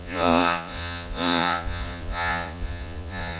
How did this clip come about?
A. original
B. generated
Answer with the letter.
B